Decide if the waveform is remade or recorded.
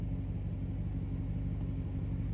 recorded